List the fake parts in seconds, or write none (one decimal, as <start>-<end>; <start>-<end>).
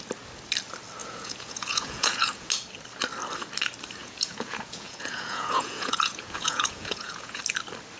1.0-2.5; 4.0-7.4